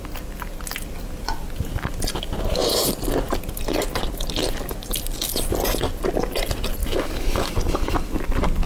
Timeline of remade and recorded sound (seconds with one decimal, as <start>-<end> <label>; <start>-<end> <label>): 0.0-6.8 recorded; 6.8-7.5 remade; 7.5-8.7 recorded